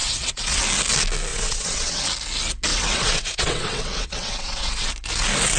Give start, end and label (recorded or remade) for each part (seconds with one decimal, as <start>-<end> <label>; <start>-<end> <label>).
0.0-0.6 remade; 0.6-1.3 recorded; 1.3-2.0 remade; 2.0-2.7 recorded; 2.7-4.9 remade; 4.9-5.6 recorded